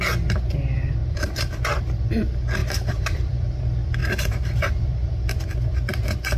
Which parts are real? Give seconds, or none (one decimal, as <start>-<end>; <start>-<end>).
0.0-1.0; 1.8-2.6; 3.6-4.0; 5.1-6.4